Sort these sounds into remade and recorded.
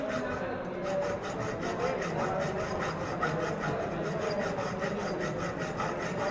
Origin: recorded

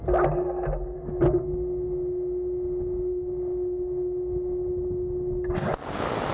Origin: recorded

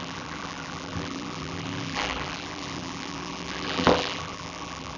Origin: remade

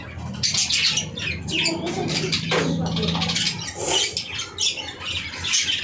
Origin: recorded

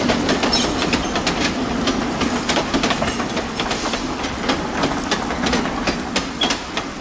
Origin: recorded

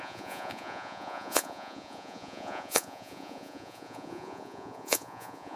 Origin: remade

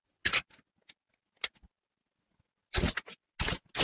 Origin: recorded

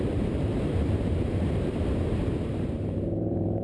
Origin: remade